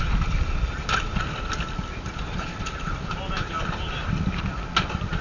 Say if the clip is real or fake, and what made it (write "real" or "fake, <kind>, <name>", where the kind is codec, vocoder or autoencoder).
real